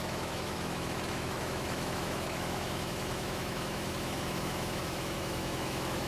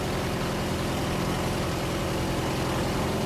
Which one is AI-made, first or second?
first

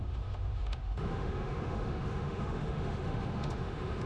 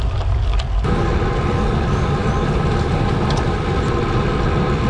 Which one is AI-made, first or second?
first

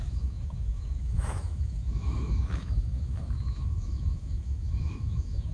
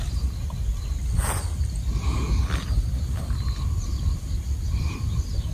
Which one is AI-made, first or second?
first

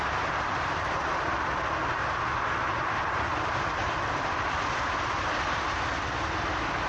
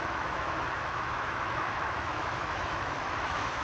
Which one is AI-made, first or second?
second